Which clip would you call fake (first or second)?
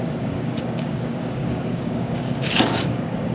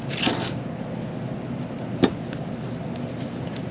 first